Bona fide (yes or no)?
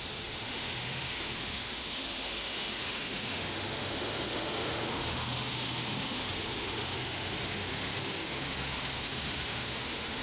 no